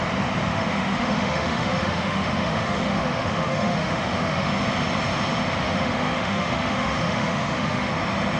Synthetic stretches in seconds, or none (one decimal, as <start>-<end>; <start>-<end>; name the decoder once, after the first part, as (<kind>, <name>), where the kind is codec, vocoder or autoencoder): 0.5-4.5 (autoencoder, DAC-VAE); 5.6-7.9